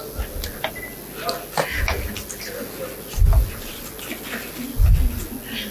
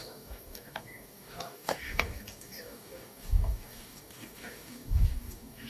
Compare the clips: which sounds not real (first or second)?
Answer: second